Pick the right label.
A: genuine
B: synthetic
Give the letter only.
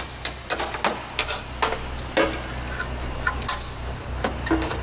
A